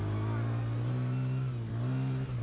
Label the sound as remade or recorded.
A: recorded